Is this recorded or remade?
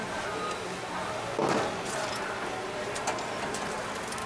recorded